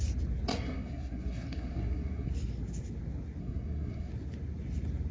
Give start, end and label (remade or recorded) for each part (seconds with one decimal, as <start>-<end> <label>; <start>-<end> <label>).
0.0-0.5 recorded; 0.5-2.3 remade; 2.3-3.4 recorded; 3.4-4.1 remade; 4.1-5.1 recorded